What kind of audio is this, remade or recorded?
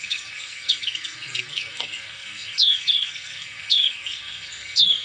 remade